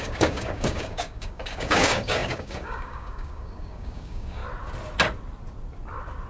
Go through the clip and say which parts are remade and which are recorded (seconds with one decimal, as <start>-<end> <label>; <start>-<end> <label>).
0.0-4.4 remade; 4.4-6.3 recorded